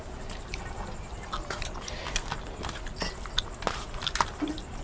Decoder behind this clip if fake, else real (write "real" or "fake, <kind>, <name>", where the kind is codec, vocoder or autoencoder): real